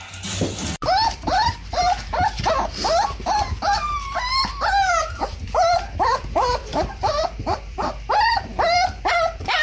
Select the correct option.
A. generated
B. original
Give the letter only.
A